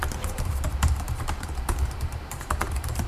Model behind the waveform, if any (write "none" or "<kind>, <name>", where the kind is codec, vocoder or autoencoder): vocoder, BigVGAN v2